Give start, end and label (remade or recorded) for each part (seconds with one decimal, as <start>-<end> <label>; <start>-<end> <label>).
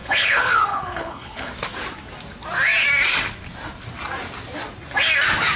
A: 0.0-1.5 remade; 1.5-5.6 recorded